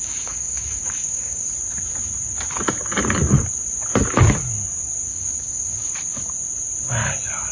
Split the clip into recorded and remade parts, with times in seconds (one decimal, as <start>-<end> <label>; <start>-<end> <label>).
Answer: 0.0-1.5 remade; 1.5-5.1 recorded; 5.1-5.9 remade; 5.9-7.5 recorded